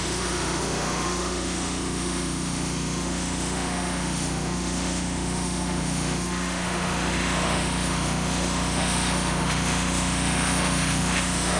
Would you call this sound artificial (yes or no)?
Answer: yes